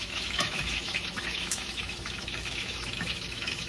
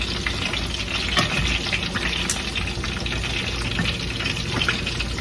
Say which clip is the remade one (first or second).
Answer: first